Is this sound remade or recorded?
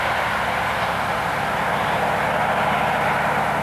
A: recorded